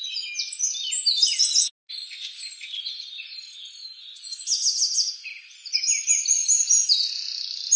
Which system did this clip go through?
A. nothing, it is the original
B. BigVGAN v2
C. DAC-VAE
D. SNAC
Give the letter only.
A